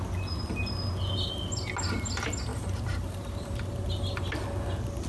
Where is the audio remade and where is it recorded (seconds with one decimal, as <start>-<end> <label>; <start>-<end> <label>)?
0.0-2.5 recorded; 2.5-4.3 remade; 4.3-5.1 recorded